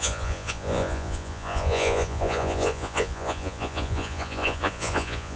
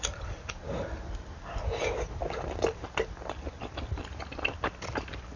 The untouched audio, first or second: second